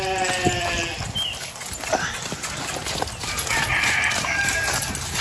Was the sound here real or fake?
real